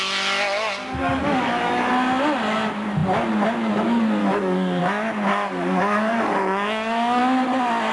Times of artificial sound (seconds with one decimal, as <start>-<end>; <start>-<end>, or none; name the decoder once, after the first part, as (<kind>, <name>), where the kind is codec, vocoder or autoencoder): 1.0-1.9 (codec, DAC); 4.2-4.8; 5.3-7.2